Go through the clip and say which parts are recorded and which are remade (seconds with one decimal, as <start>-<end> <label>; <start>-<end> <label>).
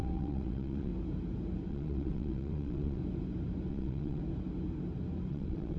0.0-0.9 remade; 0.9-1.7 recorded; 1.7-3.0 remade; 3.0-3.7 recorded; 3.7-4.2 remade; 4.2-5.3 recorded; 5.3-5.8 remade